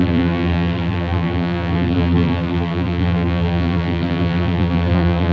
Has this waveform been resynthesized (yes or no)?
yes